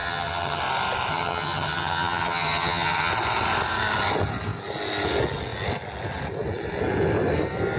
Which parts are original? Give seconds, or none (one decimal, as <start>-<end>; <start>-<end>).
0.6-1.1; 3.1-7.8